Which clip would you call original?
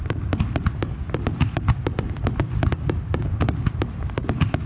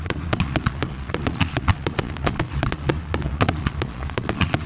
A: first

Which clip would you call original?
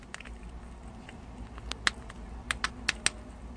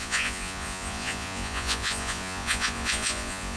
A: first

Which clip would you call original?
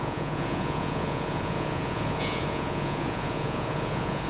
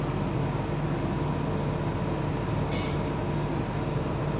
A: second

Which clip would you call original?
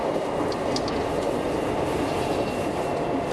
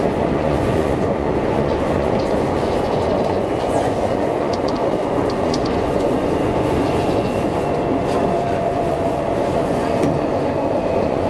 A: first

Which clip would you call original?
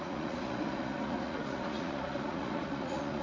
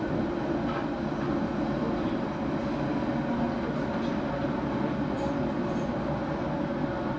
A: second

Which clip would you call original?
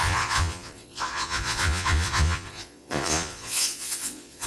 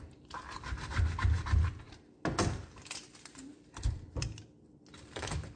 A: second